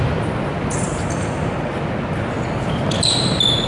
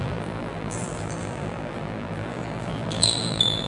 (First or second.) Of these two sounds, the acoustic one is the first